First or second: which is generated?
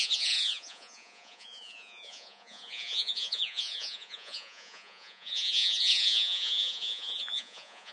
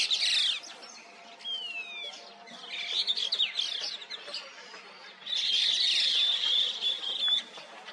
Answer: first